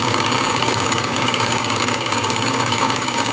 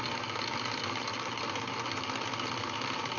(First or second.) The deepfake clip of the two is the first